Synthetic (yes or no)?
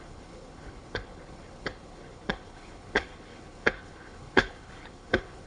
yes